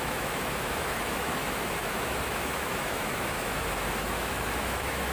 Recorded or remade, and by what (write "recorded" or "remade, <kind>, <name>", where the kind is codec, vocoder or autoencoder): remade, autoencoder, DAC-VAE